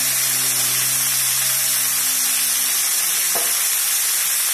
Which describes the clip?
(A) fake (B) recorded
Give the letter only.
B